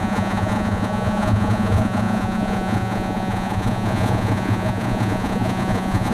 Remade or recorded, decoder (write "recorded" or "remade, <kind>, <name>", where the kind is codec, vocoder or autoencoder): remade, vocoder, Vocos